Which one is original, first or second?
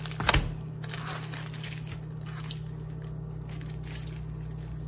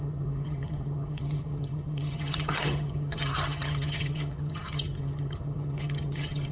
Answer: first